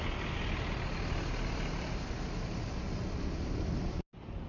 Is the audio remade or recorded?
recorded